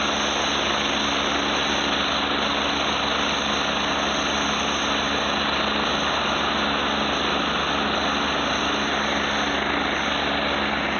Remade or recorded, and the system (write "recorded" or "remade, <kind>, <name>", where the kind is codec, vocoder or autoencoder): recorded